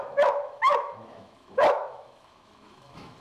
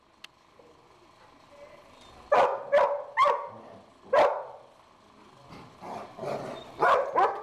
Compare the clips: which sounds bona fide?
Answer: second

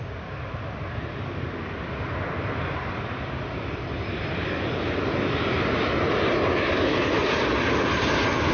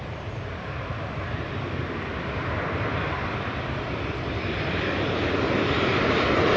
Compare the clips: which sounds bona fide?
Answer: first